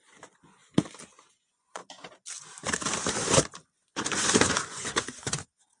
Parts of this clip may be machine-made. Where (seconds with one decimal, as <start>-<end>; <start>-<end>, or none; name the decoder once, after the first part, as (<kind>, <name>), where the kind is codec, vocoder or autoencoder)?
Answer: 0.0-0.6 (vocoder, Vocos); 1.3-1.8; 3.7-5.8